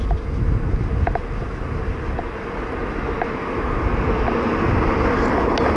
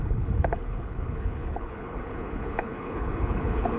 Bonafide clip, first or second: first